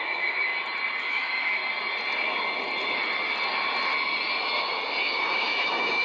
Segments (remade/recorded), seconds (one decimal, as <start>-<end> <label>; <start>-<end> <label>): 0.0-0.5 remade; 0.5-1.0 recorded; 1.0-1.6 remade; 1.6-5.2 recorded; 5.2-6.0 remade